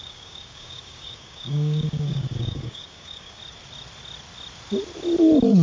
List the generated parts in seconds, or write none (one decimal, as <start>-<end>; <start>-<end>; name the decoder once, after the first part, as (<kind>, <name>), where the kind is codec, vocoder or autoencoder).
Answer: 0.0-3.4 (codec, DAC)